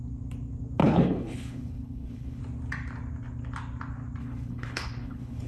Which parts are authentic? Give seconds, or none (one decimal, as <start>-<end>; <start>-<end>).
0.0-0.8; 2.4-4.2